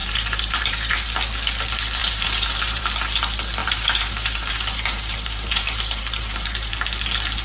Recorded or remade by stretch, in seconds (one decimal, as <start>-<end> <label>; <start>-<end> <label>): 0.0-0.9 remade; 0.9-2.0 recorded; 2.0-2.8 remade; 2.8-3.6 recorded; 3.6-6.7 remade; 6.7-7.4 recorded